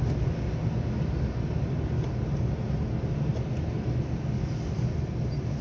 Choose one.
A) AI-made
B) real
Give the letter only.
B